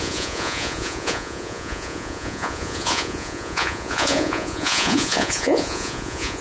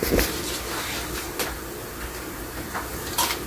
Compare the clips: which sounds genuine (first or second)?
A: second